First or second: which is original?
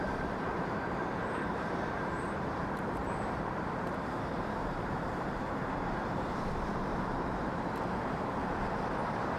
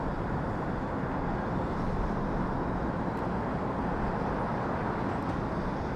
second